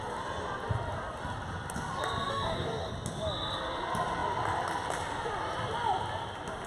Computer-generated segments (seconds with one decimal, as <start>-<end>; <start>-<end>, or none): 2.3-2.9